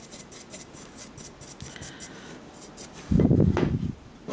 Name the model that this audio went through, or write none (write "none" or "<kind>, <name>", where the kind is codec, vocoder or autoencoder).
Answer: none